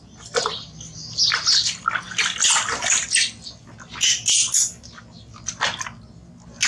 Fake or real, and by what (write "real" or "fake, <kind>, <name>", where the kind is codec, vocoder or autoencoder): real